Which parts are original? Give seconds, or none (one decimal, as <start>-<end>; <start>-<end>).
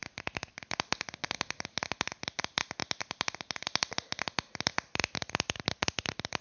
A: 0.0-6.4